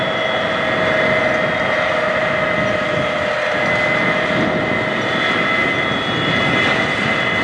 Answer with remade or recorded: recorded